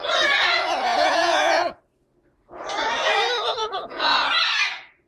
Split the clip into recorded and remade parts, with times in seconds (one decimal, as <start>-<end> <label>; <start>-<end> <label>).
0.0-0.9 recorded; 0.9-1.8 remade; 1.8-3.6 recorded; 3.6-4.1 remade; 4.1-5.1 recorded